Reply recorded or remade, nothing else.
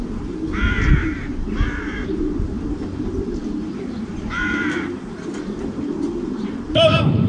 remade